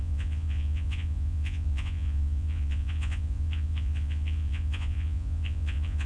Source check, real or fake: fake